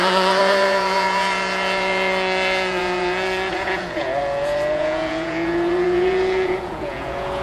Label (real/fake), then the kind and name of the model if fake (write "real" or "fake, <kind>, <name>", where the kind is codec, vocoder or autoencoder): fake, vocoder, Vocos